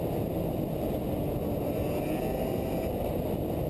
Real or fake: real